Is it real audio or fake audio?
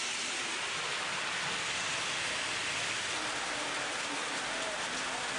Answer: real